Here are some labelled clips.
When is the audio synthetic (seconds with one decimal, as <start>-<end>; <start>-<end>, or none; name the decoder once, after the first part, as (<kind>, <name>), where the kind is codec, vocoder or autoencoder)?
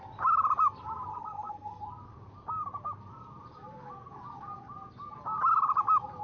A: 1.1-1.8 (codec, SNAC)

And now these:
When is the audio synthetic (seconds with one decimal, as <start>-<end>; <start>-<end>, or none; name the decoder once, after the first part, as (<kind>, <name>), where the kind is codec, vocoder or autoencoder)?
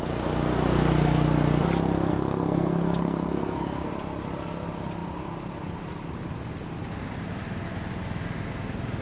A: 2.1-3.9 (codec, SNAC)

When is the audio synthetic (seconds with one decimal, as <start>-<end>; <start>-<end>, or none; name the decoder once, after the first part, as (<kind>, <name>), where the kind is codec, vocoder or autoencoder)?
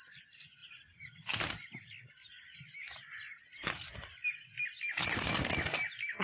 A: none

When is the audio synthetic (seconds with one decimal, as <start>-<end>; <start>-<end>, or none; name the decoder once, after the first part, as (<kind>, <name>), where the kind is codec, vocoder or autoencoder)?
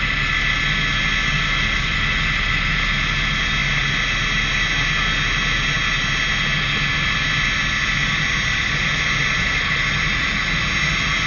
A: none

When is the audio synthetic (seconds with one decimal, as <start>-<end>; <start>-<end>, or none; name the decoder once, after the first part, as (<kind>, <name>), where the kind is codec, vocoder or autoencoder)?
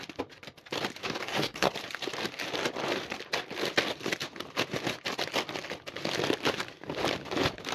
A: 1.0-1.7 (codec, DAC)